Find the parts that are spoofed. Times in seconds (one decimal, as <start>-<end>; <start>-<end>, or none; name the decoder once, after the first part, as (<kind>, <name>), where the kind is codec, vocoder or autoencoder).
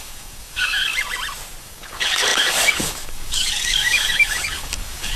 0.0-0.9 (codec, DAC); 1.6-5.2